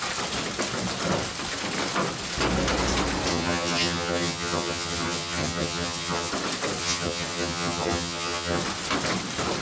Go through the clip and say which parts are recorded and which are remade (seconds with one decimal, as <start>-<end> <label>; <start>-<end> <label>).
0.0-3.3 recorded; 3.3-6.3 remade; 6.3-6.8 recorded; 6.8-8.6 remade; 8.6-9.6 recorded